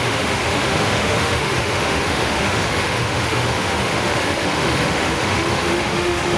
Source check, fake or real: fake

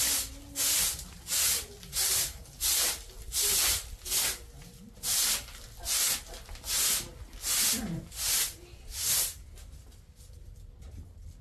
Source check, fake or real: real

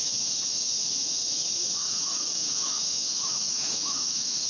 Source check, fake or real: fake